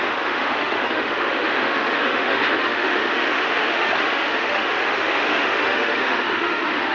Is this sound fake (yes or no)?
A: yes